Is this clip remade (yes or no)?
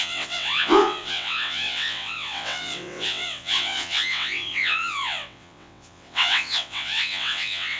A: yes